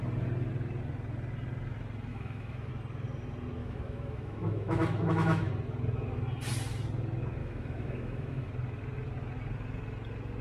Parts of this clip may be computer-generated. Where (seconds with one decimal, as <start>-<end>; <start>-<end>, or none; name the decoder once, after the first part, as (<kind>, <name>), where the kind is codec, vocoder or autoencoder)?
2.1-2.7 (autoencoder, DAC-VAE); 3.6-5.5; 7.4-8.5